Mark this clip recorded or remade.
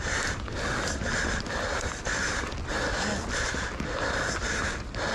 recorded